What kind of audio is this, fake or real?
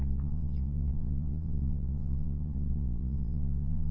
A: fake